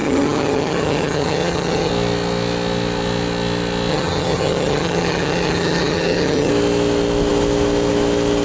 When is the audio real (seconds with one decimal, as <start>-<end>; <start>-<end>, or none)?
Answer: 1.9-3.9; 6.5-8.4